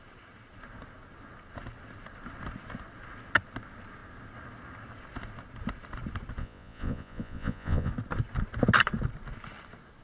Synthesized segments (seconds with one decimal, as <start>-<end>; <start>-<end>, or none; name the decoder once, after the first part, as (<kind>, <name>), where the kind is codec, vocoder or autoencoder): 6.4-7.9 (vocoder, Vocos)